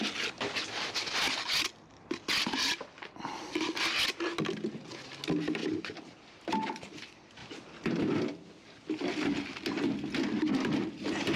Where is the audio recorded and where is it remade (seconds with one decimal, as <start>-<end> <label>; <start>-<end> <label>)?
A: 0.0-5.6 recorded; 5.6-6.5 remade; 6.5-11.4 recorded